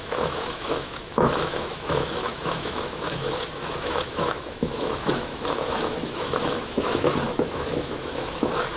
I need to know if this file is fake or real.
fake